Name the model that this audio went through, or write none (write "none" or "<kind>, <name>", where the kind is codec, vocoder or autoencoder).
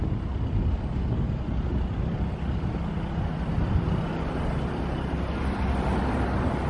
none